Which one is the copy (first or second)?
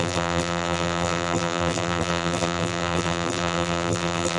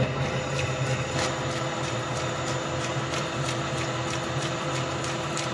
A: first